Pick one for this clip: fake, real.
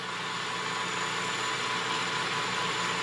real